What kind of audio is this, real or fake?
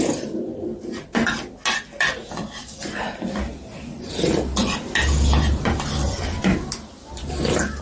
real